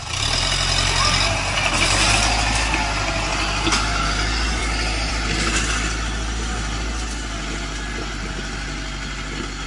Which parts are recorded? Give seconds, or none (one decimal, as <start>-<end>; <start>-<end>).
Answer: 0.0-9.7